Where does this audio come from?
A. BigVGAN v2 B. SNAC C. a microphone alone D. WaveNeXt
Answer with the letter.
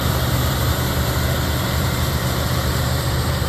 A